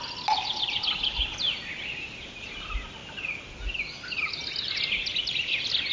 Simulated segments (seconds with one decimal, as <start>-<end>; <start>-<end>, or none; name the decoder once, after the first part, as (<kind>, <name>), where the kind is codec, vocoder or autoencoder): none